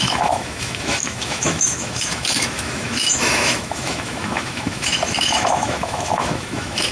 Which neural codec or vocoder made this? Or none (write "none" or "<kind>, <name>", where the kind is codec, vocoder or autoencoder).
autoencoder, DAC-VAE